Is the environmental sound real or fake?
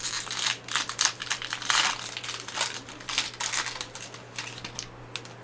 real